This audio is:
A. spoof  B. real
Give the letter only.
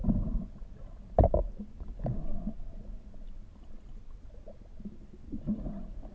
B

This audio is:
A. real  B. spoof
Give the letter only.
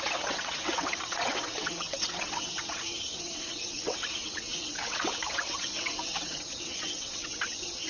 B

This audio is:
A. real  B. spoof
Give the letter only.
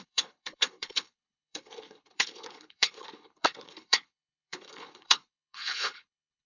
B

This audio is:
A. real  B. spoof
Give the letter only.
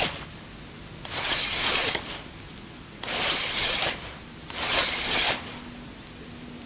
A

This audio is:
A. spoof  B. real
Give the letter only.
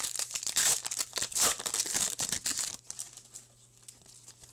B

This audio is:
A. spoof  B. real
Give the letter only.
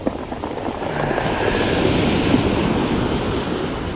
B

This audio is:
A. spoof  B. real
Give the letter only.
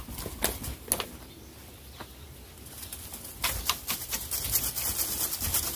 B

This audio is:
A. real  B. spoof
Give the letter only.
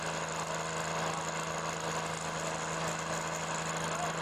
A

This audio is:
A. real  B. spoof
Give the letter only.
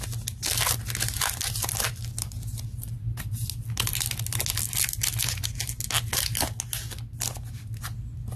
A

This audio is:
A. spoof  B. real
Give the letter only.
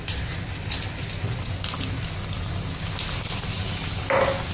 B